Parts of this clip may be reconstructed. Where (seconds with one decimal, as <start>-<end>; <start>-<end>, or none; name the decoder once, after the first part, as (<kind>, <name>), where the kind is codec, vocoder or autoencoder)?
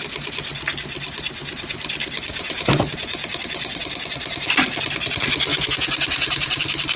2.3-3.4 (vocoder, Vocos); 5.5-6.6